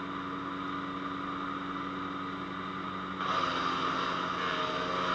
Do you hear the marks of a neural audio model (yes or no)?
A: no